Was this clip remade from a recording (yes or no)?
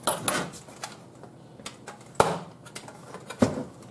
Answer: no